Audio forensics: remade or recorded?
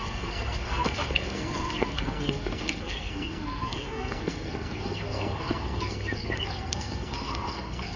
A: remade